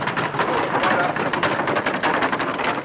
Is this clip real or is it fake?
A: real